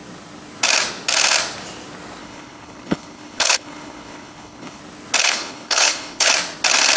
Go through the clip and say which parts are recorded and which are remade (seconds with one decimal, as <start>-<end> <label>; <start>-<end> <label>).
0.0-2.2 recorded; 2.2-4.8 remade; 4.8-5.2 recorded; 5.2-6.3 remade; 6.3-7.0 recorded